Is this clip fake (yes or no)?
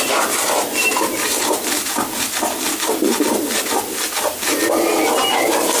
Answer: no